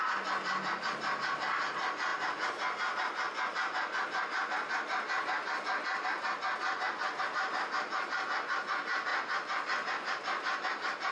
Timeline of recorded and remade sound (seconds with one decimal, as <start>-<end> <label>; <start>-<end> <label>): 0.0-11.1 recorded